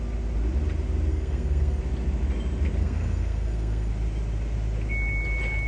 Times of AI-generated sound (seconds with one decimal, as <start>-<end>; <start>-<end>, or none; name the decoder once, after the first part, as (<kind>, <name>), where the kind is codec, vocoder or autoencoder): 1.1-1.8 (codec, SNAC); 2.8-3.9